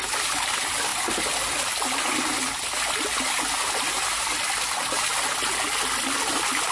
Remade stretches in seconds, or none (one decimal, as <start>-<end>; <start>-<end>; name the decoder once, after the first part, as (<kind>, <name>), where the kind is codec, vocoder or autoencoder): none